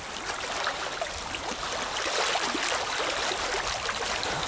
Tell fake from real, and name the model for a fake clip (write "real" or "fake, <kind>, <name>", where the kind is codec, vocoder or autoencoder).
real